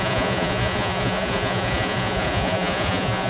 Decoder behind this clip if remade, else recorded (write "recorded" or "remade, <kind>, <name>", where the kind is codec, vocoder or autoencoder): remade, vocoder, Vocos